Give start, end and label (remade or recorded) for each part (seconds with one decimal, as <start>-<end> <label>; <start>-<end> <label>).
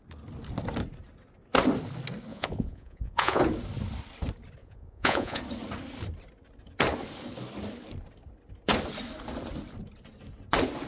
0.0-2.3 recorded; 2.3-3.4 remade; 3.4-4.6 recorded; 4.6-5.4 remade; 5.4-10.9 recorded